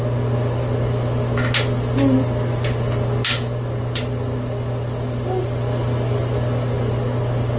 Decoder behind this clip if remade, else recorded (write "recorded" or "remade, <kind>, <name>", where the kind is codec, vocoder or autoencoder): recorded